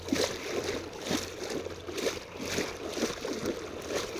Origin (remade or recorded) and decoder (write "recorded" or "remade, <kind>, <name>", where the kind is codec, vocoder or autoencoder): recorded